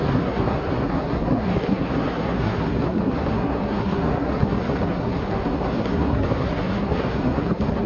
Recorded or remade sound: remade